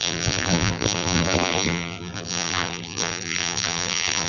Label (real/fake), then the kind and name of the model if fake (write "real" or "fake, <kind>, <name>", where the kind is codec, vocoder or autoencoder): fake, vocoder, BigVGAN v2